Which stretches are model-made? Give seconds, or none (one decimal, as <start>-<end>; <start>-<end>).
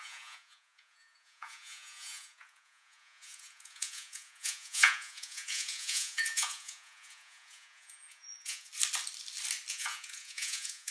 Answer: 0.0-8.7; 9.7-10.9